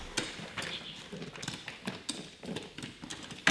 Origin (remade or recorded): recorded